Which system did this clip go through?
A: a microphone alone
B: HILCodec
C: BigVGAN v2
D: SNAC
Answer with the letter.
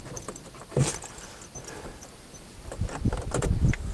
A